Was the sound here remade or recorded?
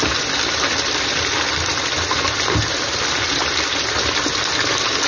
recorded